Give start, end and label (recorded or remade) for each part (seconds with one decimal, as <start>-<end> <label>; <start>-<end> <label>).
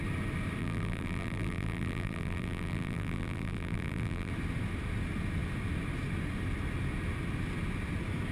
0.0-0.6 recorded; 0.6-4.3 remade; 4.3-8.3 recorded